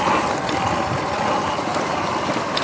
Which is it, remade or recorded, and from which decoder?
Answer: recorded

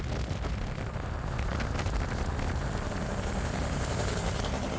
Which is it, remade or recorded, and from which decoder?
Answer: recorded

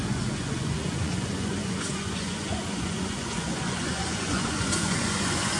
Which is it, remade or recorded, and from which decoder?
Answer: remade, vocoder, Vocos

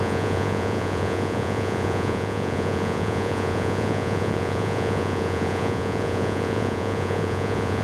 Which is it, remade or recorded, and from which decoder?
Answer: remade, vocoder, Vocos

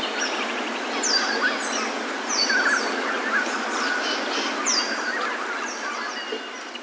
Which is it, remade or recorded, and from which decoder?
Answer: recorded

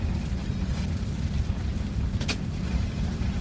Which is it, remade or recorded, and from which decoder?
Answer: recorded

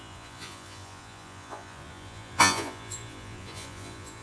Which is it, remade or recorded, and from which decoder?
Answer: remade, vocoder, Vocos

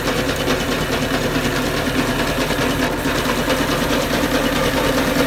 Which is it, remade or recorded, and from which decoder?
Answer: recorded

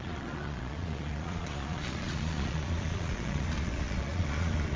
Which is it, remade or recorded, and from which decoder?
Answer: remade, vocoder, Vocos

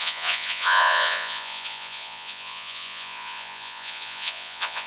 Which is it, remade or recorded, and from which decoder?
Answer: remade, vocoder, Vocos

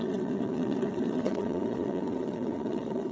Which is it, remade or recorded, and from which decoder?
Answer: remade, vocoder, Vocos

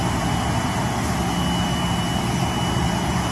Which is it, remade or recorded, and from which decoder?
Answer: recorded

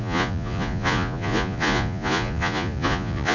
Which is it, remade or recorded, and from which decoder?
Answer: remade, vocoder, Vocos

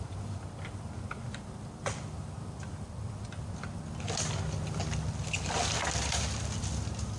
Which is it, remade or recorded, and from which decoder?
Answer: recorded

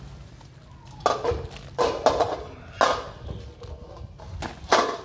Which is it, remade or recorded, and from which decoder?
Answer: recorded